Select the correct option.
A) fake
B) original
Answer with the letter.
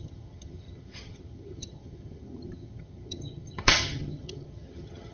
A